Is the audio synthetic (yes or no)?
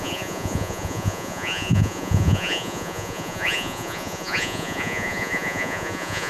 yes